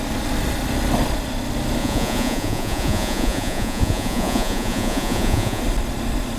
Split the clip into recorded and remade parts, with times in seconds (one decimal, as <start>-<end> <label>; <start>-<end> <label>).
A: 0.0-1.8 recorded; 1.8-5.6 remade; 5.6-6.4 recorded